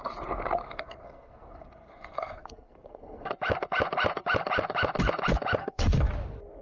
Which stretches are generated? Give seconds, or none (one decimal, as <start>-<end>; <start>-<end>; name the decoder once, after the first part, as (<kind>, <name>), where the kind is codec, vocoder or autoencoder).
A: 0.6-3.3 (codec, SNAC); 5.6-6.1